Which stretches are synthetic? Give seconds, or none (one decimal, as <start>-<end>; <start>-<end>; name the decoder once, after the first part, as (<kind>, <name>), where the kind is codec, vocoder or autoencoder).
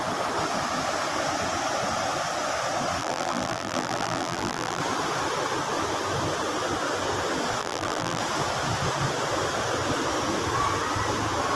3.0-4.8 (vocoder, BigVGAN v2); 7.6-8.2